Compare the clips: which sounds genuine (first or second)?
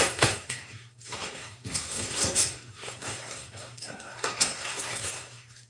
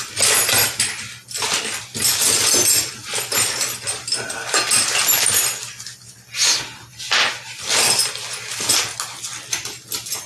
second